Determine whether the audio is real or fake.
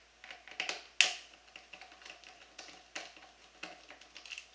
real